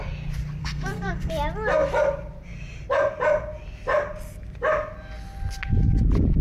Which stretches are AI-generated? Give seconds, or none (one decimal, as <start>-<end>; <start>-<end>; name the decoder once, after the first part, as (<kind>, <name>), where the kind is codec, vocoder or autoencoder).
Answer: 0.6-1.3 (codec, SNAC)